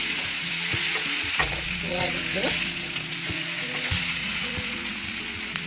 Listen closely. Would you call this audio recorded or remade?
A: remade